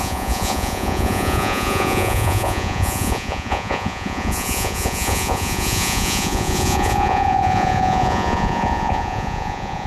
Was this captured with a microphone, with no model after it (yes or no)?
no